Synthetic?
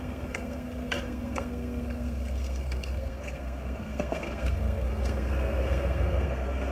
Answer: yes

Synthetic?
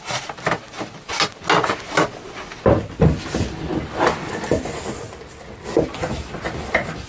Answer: no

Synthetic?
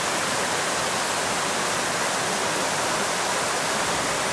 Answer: no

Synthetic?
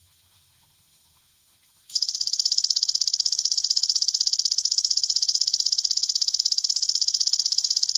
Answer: yes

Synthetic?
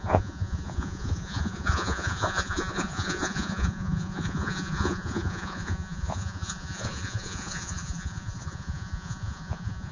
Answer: yes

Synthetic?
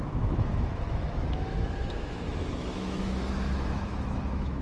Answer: yes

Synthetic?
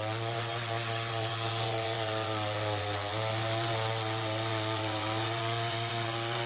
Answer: yes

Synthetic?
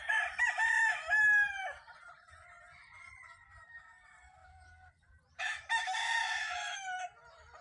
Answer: no